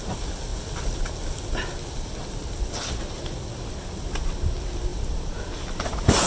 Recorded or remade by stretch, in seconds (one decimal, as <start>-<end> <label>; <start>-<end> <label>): 0.0-6.3 recorded